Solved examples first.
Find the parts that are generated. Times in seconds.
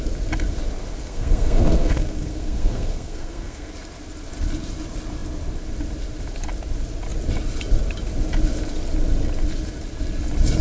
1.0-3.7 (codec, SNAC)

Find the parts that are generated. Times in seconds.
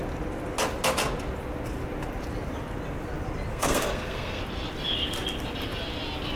3.5-4.4 (codec, SNAC)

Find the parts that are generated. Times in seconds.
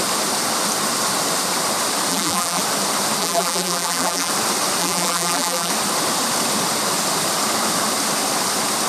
2.1-2.6 (vocoder, BigVGAN v2); 3.2-4.3; 4.8-5.7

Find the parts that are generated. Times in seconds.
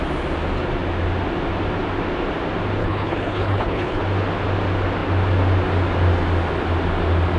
2.8-4.0 (codec, HILCodec)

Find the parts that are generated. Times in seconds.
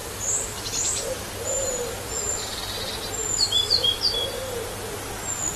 0.0-2.9 (vocoder, BigVGAN v2)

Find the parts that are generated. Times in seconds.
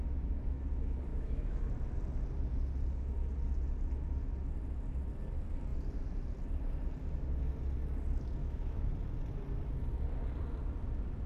1.1-1.7 (autoencoder, DAC-VAE); 8.4-8.9